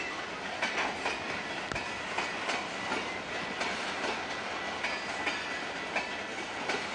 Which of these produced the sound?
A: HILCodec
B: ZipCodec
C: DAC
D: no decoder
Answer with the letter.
D